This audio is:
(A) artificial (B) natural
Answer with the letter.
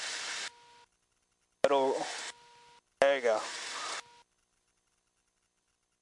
B